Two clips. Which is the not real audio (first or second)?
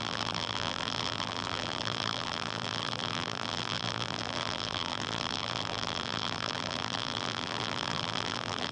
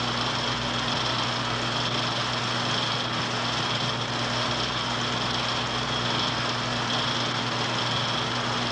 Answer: first